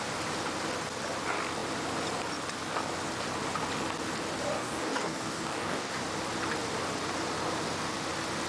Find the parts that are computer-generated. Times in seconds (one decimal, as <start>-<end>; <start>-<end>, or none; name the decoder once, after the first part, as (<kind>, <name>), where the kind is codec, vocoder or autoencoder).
4.6-5.9 (codec, DAC)